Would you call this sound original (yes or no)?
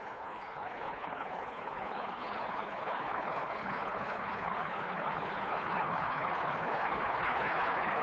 no